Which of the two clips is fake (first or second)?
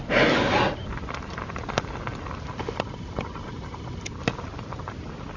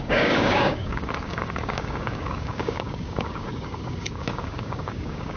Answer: second